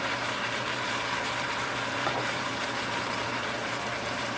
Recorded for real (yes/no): no